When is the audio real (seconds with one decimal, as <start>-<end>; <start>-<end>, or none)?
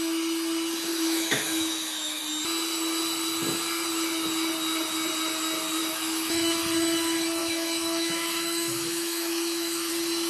0.0-0.9; 2.2-5.8; 6.6-7.4; 9.9-10.3